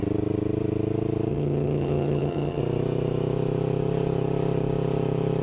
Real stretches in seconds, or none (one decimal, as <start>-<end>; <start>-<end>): 0.0-1.3; 2.6-5.4